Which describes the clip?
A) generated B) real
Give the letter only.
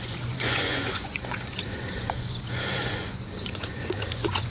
A